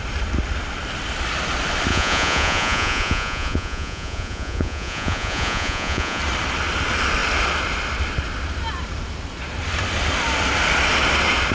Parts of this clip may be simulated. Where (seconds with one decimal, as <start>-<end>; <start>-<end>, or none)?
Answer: 1.9-6.2